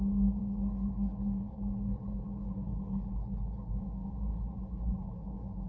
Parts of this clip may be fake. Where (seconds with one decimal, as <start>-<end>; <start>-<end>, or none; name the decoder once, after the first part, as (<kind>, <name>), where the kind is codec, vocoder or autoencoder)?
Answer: 0.4-3.8 (codec, HILCodec); 4.3-5.7